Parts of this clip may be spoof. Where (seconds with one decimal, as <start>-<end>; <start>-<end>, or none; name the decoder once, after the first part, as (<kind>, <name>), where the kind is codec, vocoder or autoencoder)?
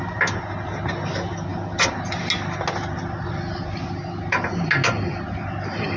none